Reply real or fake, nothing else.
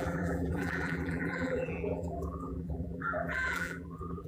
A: fake